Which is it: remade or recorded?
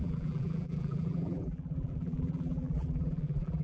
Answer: remade